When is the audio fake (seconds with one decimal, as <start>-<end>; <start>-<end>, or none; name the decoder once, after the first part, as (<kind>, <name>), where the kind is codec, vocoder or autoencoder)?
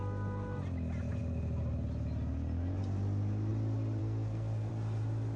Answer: 4.0-4.7 (codec, SNAC)